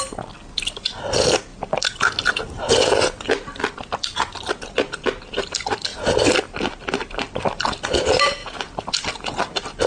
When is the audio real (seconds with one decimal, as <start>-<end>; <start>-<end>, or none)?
0.0-8.4; 8.9-9.9